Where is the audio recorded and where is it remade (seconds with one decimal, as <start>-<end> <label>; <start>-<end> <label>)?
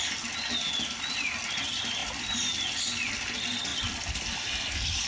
0.0-2.0 recorded; 2.0-2.8 remade; 2.8-3.7 recorded; 3.7-5.1 remade